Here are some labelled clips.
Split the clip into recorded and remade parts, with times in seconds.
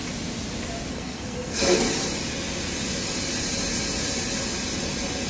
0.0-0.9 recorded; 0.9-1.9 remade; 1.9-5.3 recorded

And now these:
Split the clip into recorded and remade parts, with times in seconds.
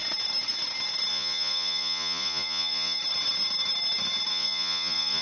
0.0-1.1 recorded; 1.1-3.0 remade; 3.0-4.3 recorded; 4.3-5.2 remade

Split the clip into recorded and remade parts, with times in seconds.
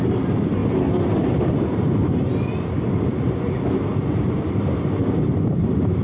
0.0-0.6 remade; 0.6-4.1 recorded; 4.1-5.0 remade; 5.0-5.5 recorded; 5.5-6.0 remade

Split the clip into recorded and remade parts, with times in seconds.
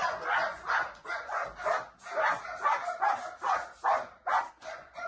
0.0-1.4 remade; 1.4-4.5 recorded; 4.5-5.1 remade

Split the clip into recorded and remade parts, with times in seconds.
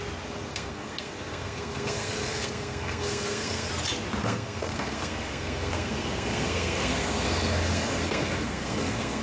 0.0-0.5 recorded; 0.5-3.7 remade; 3.7-4.2 recorded; 4.2-9.2 remade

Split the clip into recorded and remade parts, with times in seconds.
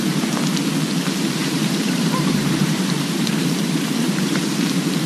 0.0-1.4 recorded; 1.4-4.4 remade; 4.4-5.1 recorded